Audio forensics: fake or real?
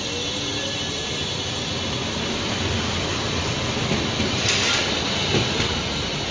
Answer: real